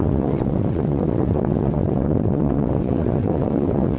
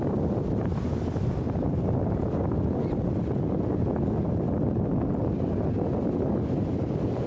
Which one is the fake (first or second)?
first